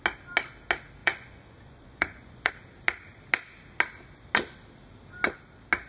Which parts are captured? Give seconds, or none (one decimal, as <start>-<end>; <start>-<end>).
0.0-1.0; 2.5-5.9